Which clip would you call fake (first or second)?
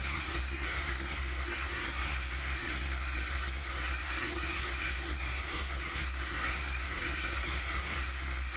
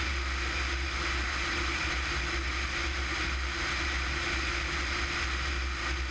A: first